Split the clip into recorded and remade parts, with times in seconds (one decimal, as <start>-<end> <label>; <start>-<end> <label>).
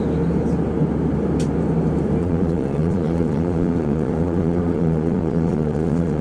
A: 0.0-2.2 recorded; 2.2-6.2 remade